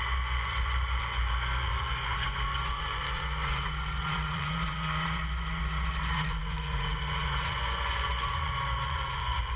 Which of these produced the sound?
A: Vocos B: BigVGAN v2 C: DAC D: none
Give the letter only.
A